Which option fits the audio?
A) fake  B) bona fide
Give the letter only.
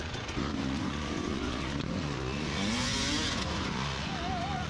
A